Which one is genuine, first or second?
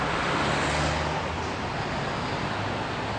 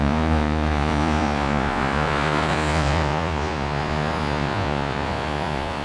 first